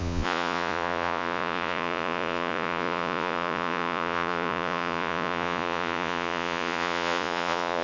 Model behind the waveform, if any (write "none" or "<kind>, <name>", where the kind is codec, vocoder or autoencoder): vocoder, Vocos